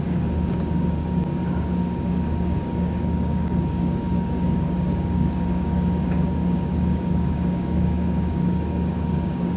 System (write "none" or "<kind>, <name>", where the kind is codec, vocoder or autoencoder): codec, DAC